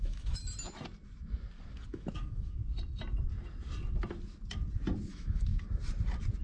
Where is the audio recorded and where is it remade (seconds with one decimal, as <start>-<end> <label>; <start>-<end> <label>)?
0.0-0.4 remade; 0.4-1.9 recorded; 1.9-2.6 remade; 2.6-5.1 recorded; 5.1-5.5 remade; 5.5-6.4 recorded